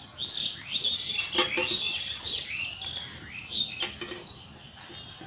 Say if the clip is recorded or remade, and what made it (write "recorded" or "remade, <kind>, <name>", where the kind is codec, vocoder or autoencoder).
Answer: recorded